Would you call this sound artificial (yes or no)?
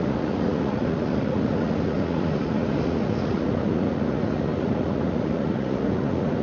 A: yes